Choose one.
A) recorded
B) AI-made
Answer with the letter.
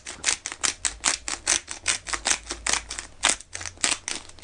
A